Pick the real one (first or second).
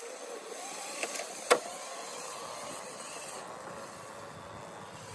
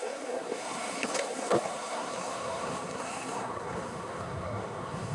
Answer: first